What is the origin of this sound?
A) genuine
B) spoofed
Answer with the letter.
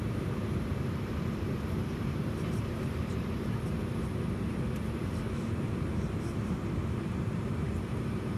B